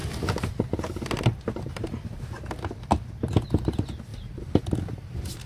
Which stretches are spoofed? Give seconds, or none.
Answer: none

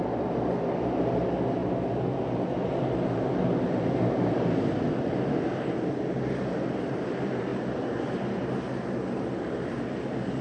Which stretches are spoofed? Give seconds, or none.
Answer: none

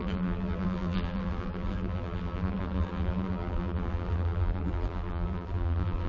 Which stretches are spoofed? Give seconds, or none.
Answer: 0.0-6.1

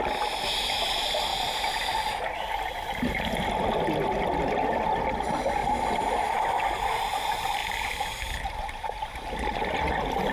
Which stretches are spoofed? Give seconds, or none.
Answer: 1.3-1.9; 5.6-6.3; 7.6-9.8

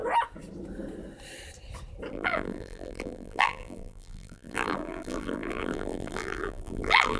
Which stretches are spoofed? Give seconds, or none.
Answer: 2.1-7.2

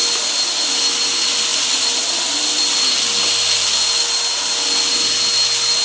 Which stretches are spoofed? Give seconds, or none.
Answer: 1.5-2.6